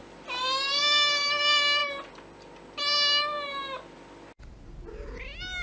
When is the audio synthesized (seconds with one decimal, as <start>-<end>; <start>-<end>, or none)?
none